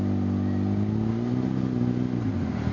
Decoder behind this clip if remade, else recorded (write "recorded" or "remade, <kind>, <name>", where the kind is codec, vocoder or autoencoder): recorded